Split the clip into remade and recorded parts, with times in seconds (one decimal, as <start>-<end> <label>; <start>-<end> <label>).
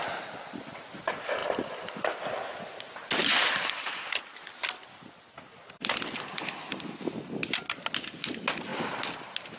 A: 0.0-9.6 recorded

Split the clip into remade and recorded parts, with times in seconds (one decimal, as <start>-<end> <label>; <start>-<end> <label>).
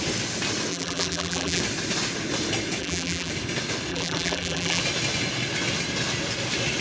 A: 0.0-0.7 recorded; 0.7-1.6 remade; 1.6-2.8 recorded; 2.8-3.3 remade; 3.3-3.9 recorded; 3.9-4.8 remade; 4.8-6.8 recorded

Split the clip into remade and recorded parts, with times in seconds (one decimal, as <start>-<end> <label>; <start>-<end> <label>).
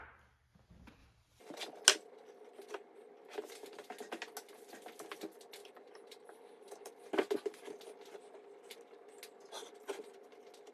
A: 0.0-1.0 recorded; 1.0-1.6 remade; 1.6-5.6 recorded; 5.6-6.9 remade; 6.9-10.7 recorded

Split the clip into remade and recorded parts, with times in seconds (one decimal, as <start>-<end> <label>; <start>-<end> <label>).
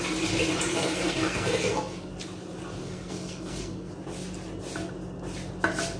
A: 0.0-0.7 recorded; 0.7-2.1 remade; 2.1-2.8 recorded; 2.8-3.9 remade; 3.9-6.0 recorded